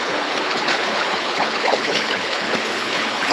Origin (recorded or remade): remade